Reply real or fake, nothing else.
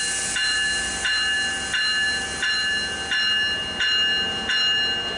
real